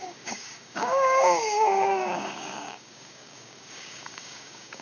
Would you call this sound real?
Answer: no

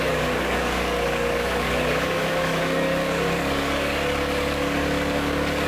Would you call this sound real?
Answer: no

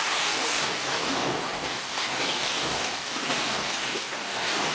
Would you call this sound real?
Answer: no